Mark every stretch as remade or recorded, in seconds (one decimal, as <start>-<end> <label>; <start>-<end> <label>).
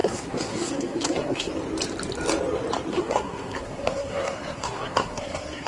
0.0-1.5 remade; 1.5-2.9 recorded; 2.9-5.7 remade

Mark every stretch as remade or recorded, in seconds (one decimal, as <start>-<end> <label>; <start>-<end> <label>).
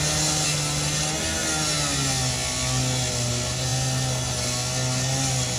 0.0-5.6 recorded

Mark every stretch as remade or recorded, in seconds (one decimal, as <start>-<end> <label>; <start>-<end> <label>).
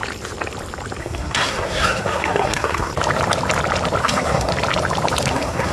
0.0-1.0 recorded; 1.0-2.9 remade; 2.9-4.0 recorded; 4.0-4.5 remade; 4.5-5.3 recorded; 5.3-5.7 remade